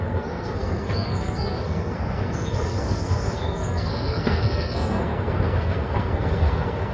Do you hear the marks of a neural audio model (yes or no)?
yes